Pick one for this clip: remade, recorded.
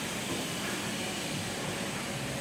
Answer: recorded